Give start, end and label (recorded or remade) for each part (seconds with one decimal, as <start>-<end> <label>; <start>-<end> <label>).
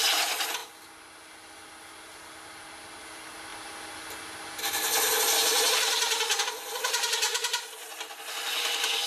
0.0-9.1 recorded